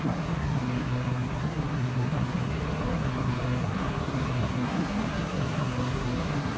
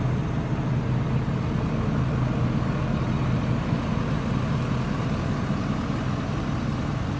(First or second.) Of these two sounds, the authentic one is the second